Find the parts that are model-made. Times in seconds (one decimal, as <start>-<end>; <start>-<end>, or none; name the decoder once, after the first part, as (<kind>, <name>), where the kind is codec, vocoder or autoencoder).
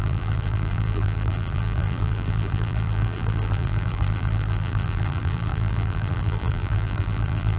0.0-7.6 (vocoder, BigVGAN v2)